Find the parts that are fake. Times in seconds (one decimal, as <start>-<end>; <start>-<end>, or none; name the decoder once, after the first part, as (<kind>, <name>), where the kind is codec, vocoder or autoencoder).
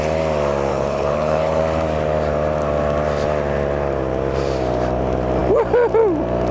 0.7-1.6 (codec, HILCodec)